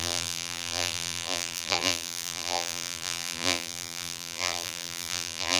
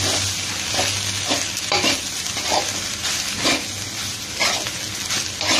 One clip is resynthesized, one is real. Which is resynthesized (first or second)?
first